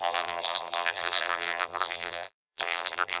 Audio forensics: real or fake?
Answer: fake